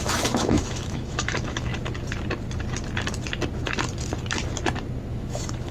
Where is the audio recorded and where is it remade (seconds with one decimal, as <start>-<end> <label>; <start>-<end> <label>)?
0.0-1.7 remade; 1.7-5.1 recorded; 5.1-5.7 remade